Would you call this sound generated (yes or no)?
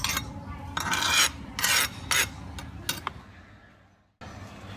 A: no